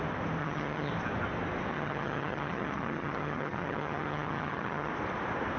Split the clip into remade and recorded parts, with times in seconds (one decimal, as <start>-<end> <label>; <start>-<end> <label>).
0.0-0.4 recorded; 0.4-0.9 remade; 0.9-1.7 recorded; 1.7-4.9 remade; 4.9-5.6 recorded